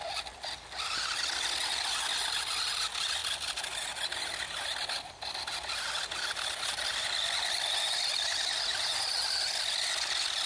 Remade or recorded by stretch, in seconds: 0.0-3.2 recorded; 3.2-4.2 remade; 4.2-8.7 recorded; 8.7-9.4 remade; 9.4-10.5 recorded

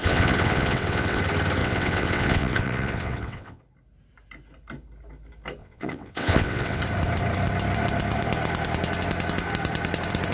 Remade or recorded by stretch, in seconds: 0.0-1.2 remade; 1.2-1.6 recorded; 1.6-3.6 remade; 3.6-5.6 recorded; 5.6-6.8 remade; 6.8-10.3 recorded

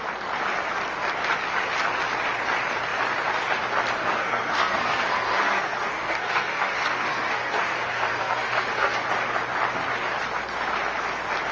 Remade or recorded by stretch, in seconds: 0.0-4.0 recorded; 4.0-9.1 remade; 9.1-11.5 recorded

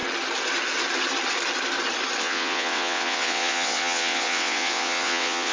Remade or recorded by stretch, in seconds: 0.0-2.2 recorded; 2.2-5.5 remade

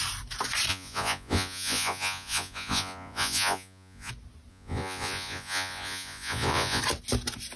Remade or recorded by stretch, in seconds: 0.0-0.7 recorded; 0.7-4.1 remade; 4.1-4.5 recorded; 4.5-6.8 remade; 6.8-7.6 recorded